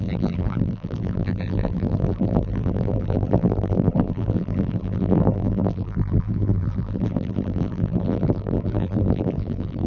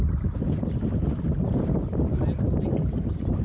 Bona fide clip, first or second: second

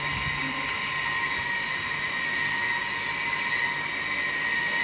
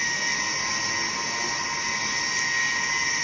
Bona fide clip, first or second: second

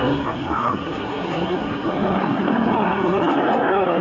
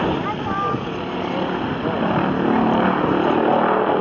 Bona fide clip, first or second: second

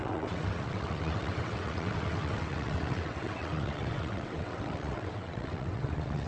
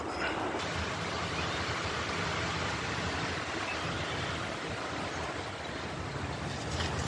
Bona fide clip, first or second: second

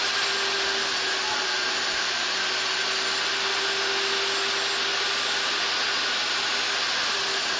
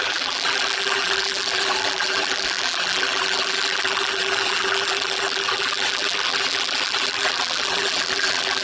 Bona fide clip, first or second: first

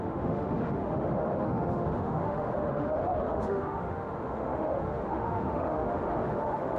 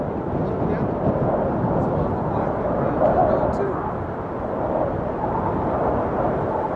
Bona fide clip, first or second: second